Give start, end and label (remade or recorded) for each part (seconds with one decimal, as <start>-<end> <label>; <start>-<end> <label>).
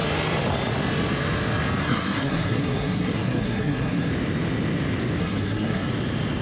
0.0-1.8 recorded; 1.8-4.1 remade; 4.1-5.2 recorded; 5.2-5.9 remade; 5.9-6.4 recorded